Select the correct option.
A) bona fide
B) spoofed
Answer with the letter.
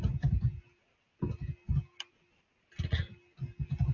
A